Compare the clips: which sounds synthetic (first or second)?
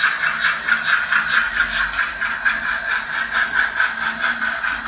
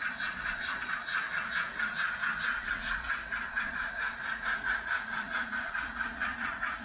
second